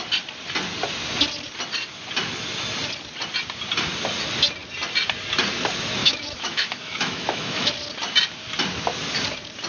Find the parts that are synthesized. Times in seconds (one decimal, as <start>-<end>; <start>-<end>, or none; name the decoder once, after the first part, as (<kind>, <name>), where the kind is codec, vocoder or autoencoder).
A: 6.0-7.7 (autoencoder, DAC-VAE)